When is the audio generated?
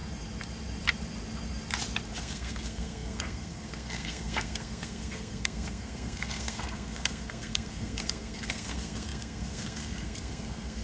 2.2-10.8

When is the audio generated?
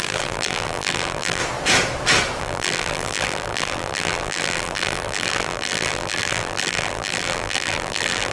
0.0-1.4; 2.4-8.3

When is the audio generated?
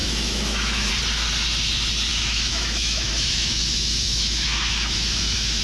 0.0-0.9; 2.1-5.6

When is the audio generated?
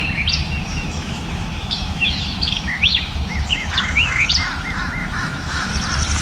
0.6-4.3; 5.0-5.7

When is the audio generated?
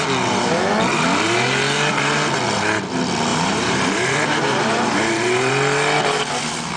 3.3-5.5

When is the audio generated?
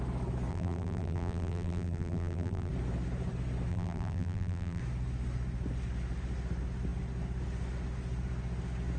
0.5-2.7; 3.7-4.8